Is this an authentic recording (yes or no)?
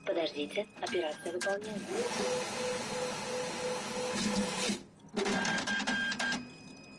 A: yes